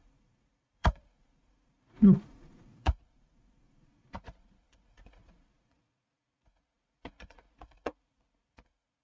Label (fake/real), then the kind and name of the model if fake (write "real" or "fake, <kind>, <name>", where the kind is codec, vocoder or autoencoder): fake, vocoder, Vocos